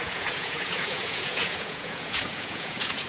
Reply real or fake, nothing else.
fake